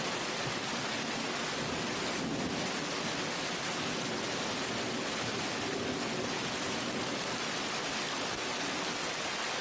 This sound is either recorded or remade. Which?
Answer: recorded